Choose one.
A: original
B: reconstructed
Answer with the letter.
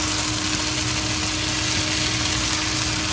A